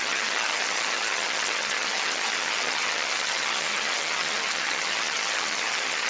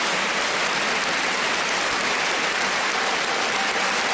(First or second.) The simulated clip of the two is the first